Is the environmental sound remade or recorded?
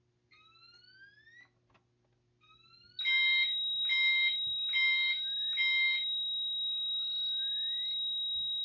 recorded